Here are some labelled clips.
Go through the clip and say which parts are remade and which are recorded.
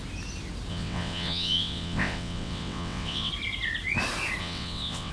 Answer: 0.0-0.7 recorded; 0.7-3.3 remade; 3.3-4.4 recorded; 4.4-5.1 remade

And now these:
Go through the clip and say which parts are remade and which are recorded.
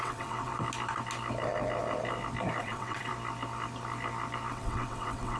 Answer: 0.0-0.5 remade; 0.5-2.6 recorded; 2.6-3.1 remade; 3.1-4.5 recorded; 4.5-5.4 remade